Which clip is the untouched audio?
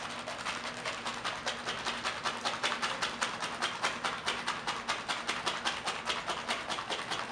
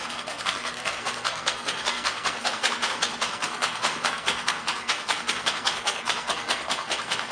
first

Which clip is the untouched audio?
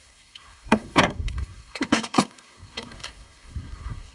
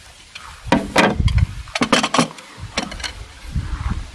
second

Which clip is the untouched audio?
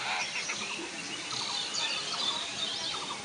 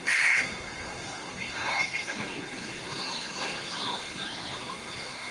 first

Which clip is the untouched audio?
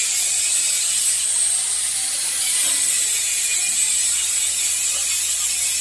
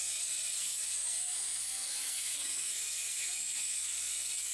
first